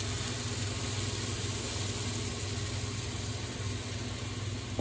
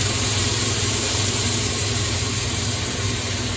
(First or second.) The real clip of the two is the first